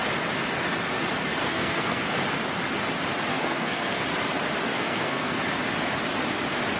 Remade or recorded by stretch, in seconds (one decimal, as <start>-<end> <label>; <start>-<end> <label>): 0.0-1.4 recorded; 1.4-2.1 remade; 2.1-3.3 recorded; 3.3-4.0 remade; 4.0-4.7 recorded; 4.7-5.4 remade; 5.4-6.8 recorded